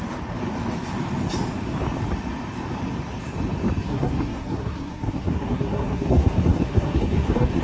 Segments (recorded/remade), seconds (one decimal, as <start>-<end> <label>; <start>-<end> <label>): 0.0-3.9 recorded; 3.9-7.6 remade